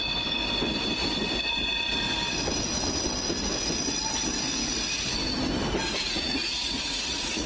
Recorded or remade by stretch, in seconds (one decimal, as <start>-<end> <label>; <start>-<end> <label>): 0.0-6.0 recorded; 6.0-7.5 remade